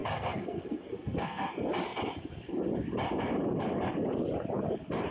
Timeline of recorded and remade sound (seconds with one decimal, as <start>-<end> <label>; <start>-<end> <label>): 0.0-1.5 remade; 1.5-5.1 recorded